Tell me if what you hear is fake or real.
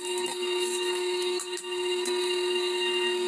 fake